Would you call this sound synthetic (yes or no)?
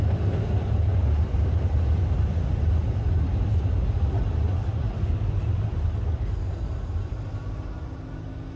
no